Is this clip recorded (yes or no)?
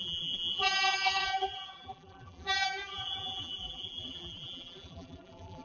no